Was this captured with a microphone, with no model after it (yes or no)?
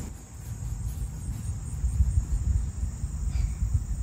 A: yes